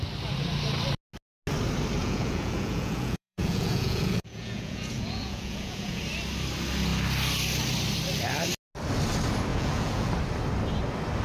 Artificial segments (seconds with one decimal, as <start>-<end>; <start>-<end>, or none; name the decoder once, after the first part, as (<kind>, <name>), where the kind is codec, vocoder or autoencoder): 2.0-6.0 (vocoder, Vocos); 9.5-10.1